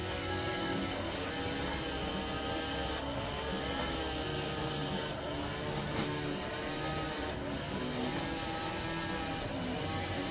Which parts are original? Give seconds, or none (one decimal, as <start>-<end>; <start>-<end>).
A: 1.3-10.3

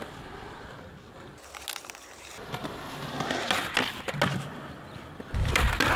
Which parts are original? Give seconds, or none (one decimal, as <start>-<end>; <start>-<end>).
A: 0.0-6.0

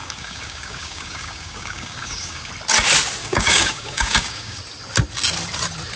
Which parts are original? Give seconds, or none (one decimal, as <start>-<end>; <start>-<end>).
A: 2.5-3.2; 4.6-6.0

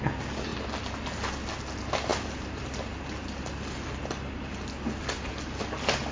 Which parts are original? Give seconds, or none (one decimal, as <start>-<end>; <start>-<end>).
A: 0.0-6.1